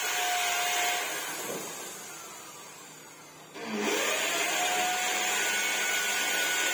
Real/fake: real